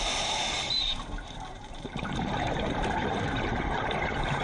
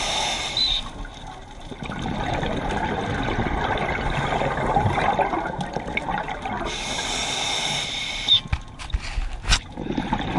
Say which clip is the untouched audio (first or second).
second